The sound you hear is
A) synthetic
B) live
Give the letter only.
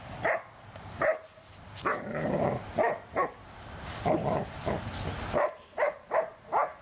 A